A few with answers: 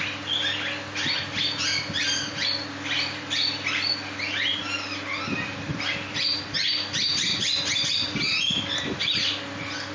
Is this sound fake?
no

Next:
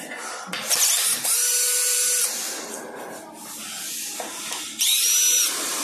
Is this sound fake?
no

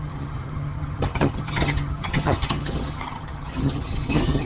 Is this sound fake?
yes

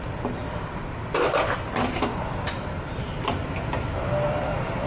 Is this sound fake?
yes